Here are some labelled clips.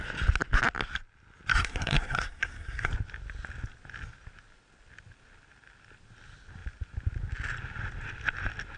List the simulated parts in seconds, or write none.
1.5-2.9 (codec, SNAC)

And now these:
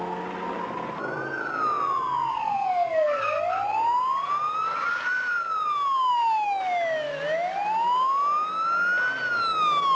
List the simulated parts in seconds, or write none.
2.3-3.2 (codec, SNAC)

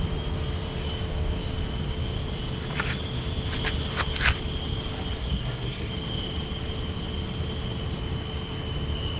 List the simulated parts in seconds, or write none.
5.2-5.9 (codec, SNAC)

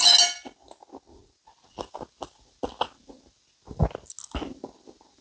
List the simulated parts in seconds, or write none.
none

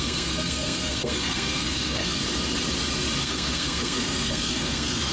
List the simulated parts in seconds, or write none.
0.0-2.2 (codec, SNAC); 3.2-5.1

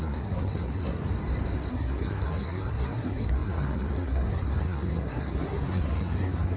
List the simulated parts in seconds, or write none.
0.0-1.0 (codec, SNAC); 1.7-6.6